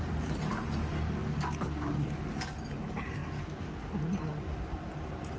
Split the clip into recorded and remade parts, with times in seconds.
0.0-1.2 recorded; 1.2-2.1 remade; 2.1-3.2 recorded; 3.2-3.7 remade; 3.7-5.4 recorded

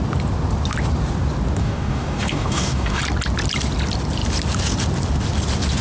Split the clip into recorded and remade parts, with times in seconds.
0.0-1.6 recorded; 1.6-3.0 remade; 3.0-5.8 recorded

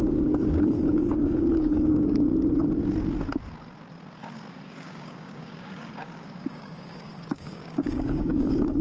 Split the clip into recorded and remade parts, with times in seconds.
0.0-2.3 remade; 2.3-4.5 recorded; 4.5-8.8 remade

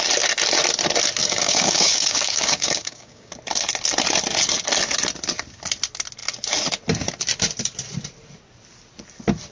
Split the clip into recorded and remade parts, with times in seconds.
0.0-1.2 recorded; 1.2-3.3 remade; 3.3-9.5 recorded

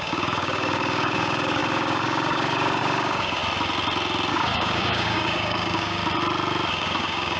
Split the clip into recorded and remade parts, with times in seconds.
0.0-3.4 remade; 3.4-4.3 recorded; 4.3-6.0 remade; 6.0-6.7 recorded; 6.7-7.4 remade

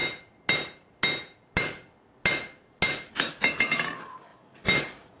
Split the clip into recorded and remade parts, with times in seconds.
0.0-3.1 recorded; 3.1-5.2 remade

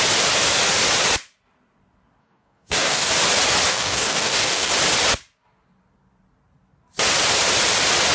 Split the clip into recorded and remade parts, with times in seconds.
0.0-2.2 recorded; 2.2-3.1 remade; 3.1-3.7 recorded; 3.7-4.7 remade; 4.7-8.1 recorded

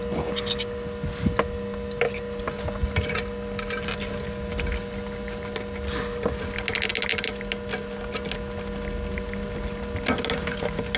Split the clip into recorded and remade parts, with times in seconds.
0.0-11.0 recorded